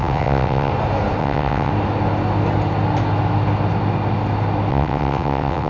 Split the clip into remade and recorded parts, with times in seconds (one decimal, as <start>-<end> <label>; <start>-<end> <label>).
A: 0.0-0.7 remade; 0.7-1.2 recorded; 1.2-1.7 remade; 1.7-4.7 recorded; 4.7-5.7 remade